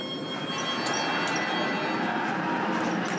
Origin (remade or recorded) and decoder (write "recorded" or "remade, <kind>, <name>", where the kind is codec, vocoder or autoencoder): recorded